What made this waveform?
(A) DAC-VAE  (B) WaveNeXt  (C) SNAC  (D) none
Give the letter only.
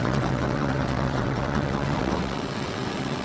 B